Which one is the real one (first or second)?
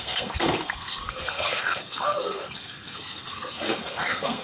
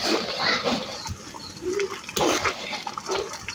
second